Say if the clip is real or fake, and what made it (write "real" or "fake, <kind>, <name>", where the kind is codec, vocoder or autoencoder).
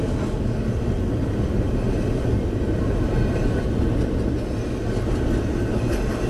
real